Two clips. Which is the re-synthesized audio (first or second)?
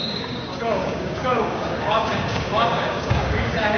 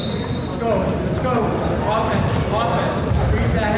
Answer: first